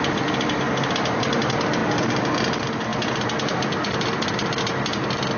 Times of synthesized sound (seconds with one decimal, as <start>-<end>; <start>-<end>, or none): none